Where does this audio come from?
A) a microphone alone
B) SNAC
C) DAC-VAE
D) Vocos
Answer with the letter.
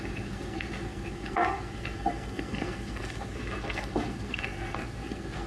B